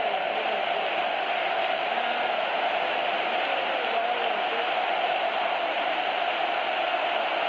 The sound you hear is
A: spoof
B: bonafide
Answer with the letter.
B